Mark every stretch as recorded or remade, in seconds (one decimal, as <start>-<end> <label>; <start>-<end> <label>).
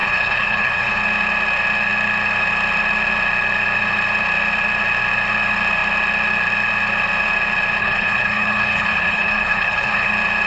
0.0-1.0 remade; 1.0-7.8 recorded; 7.8-10.1 remade; 10.1-10.5 recorded